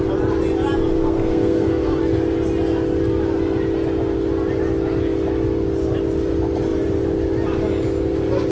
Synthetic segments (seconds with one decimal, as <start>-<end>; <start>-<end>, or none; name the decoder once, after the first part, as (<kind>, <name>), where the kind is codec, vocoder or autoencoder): 1.0-2.0 (codec, SNAC)